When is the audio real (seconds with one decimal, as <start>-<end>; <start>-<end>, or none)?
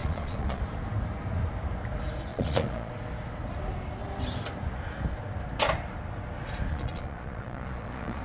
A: 0.6-2.3; 2.9-6.7